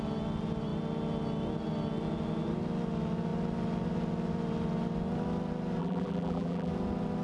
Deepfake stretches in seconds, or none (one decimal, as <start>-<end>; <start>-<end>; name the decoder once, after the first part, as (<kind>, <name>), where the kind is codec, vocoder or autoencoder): 5.8-6.7 (vocoder, BigVGAN v2)